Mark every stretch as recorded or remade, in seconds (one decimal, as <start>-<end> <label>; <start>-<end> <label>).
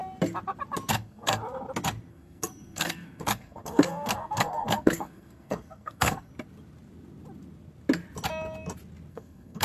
0.0-0.9 recorded; 0.9-1.4 remade; 1.4-2.1 recorded; 2.1-6.3 remade; 6.3-9.1 recorded; 9.1-9.6 remade